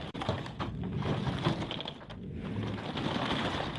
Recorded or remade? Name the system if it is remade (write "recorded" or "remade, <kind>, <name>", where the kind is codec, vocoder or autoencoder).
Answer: recorded